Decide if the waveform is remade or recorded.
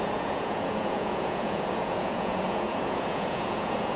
remade